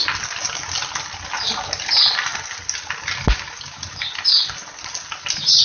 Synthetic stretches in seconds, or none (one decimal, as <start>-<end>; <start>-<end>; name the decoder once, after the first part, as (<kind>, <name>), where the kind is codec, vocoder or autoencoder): none